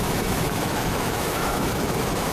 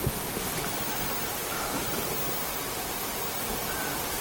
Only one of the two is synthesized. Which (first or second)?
first